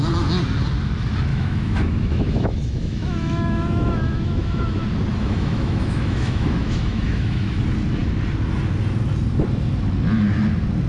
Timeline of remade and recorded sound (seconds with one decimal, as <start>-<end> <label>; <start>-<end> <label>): 0.0-1.3 recorded; 1.3-4.8 remade; 4.8-5.2 recorded; 5.2-7.6 remade; 7.6-10.9 recorded